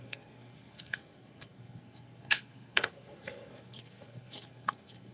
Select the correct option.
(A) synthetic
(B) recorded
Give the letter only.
A